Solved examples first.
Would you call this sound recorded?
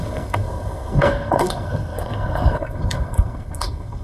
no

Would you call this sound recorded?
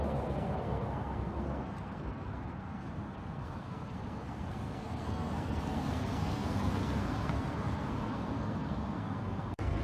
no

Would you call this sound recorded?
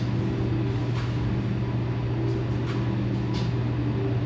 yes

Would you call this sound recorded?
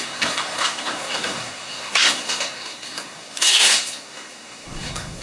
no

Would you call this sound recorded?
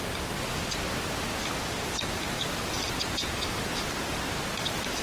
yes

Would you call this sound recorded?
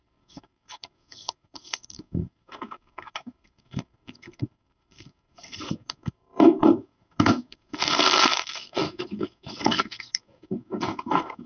no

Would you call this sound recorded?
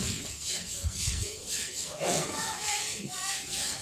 no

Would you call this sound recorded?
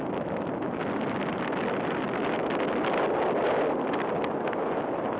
yes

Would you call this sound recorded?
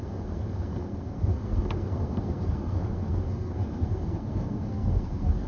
no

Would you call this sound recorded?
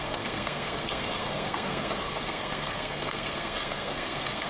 no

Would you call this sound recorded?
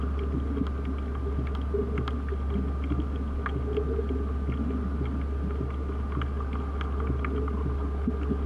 yes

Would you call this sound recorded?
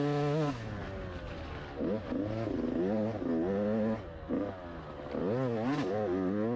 yes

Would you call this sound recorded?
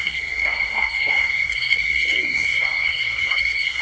no